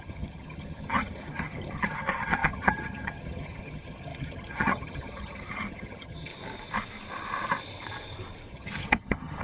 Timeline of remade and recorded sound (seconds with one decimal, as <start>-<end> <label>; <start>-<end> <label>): 0.0-6.3 remade; 6.3-8.5 recorded; 8.5-9.4 remade